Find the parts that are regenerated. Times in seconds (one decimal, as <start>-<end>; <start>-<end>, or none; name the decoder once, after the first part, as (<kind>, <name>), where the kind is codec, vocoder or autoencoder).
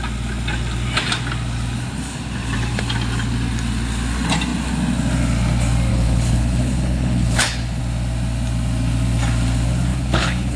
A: 5.9-7.8 (codec, HILCodec); 9.9-10.6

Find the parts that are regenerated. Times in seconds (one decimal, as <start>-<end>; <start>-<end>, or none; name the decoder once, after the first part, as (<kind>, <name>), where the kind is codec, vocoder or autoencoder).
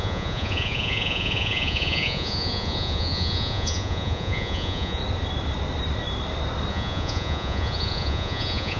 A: 0.0-5.0 (vocoder, Vocos); 6.7-8.8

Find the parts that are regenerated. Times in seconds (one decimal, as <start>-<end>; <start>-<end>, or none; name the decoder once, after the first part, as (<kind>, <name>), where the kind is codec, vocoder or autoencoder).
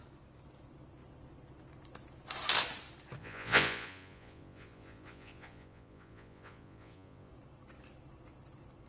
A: 3.2-7.3 (vocoder, Vocos)